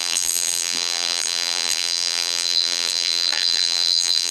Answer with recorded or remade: remade